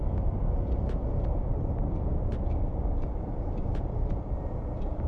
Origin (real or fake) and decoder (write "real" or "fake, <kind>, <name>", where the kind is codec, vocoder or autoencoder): real